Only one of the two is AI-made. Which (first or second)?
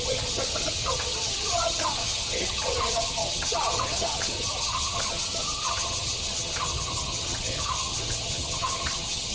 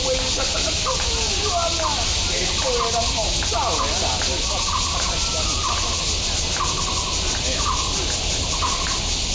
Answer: first